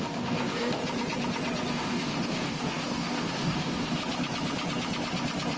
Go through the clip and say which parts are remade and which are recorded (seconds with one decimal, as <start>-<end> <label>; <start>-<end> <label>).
0.0-0.8 remade; 0.8-1.7 recorded; 1.7-4.0 remade; 4.0-5.6 recorded